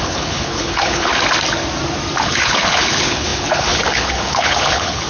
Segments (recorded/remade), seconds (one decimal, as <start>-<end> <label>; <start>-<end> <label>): 0.0-1.1 remade; 1.1-2.2 recorded; 2.2-5.1 remade